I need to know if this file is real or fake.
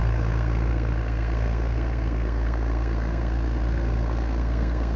fake